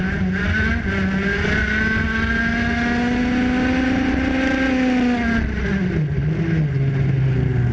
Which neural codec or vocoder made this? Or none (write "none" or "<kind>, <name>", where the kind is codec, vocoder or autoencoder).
none